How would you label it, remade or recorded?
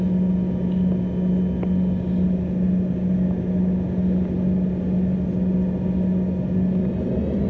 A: recorded